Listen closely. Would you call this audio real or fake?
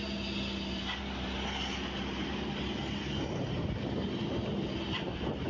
real